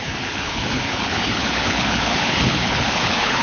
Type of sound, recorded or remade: remade